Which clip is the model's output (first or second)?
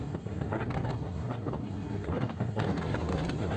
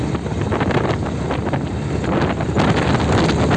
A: first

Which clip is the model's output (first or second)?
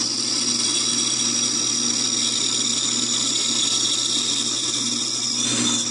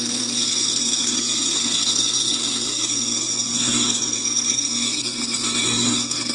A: second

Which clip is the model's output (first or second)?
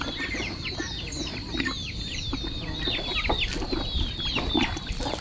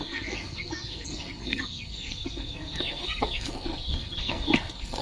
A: second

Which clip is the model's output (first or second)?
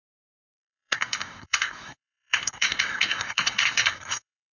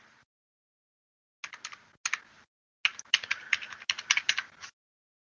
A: first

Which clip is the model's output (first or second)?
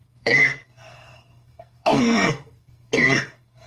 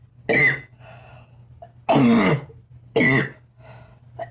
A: first